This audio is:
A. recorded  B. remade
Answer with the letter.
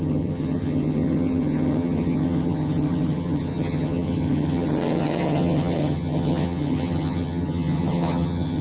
B